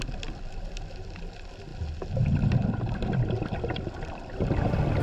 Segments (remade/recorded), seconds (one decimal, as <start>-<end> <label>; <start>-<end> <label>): 0.0-5.0 recorded